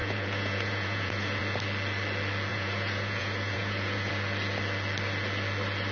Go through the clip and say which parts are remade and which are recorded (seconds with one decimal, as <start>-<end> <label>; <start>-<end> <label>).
0.0-1.4 remade; 1.4-2.5 recorded; 2.5-4.1 remade; 4.1-5.9 recorded